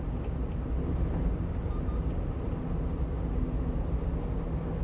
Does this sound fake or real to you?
real